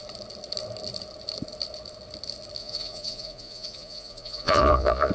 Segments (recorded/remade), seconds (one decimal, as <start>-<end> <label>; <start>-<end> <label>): 0.0-2.6 recorded; 2.6-5.1 remade